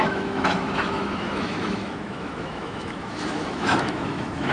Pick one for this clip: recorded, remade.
remade